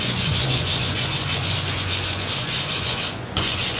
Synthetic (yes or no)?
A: yes